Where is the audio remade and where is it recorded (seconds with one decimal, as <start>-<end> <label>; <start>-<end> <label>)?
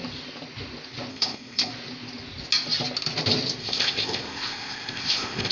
0.0-1.1 recorded; 1.1-1.7 remade; 1.7-3.6 recorded; 3.6-5.5 remade